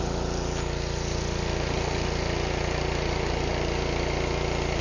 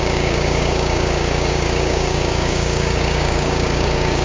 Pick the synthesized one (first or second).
second